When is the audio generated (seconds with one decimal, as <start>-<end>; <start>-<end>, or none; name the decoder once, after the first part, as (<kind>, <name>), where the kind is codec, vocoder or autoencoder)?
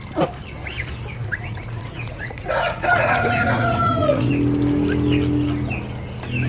1.2-4.3 (vocoder, Vocos)